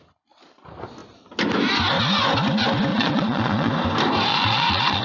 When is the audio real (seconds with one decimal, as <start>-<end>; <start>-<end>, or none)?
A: 0.0-2.9; 3.7-4.3